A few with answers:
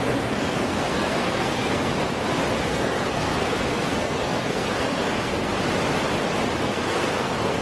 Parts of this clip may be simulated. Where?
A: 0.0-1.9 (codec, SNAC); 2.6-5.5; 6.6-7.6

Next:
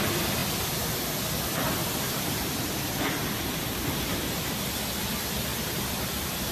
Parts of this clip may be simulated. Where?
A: 1.8-4.5 (vocoder, BigVGAN v2); 5.5-6.5

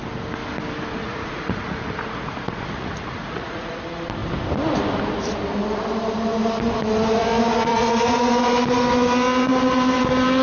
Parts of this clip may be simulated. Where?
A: 1.0-3.8 (vocoder, Vocos); 7.7-8.3

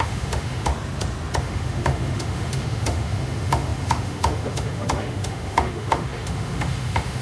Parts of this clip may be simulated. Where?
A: 0.0-0.7 (autoencoder, DAC-VAE); 1.4-7.2

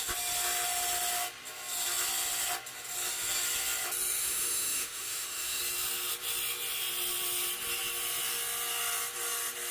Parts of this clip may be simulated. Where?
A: 4.2-5.6 (autoencoder, DAC-VAE)

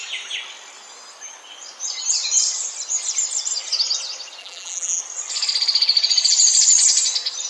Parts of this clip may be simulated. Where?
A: 4.4-5.0 (vocoder, BigVGAN v2)